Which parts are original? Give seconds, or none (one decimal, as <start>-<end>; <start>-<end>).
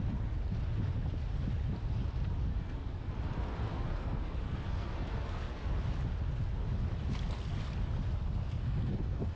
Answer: 0.0-2.5; 3.1-3.7; 5.7-8.4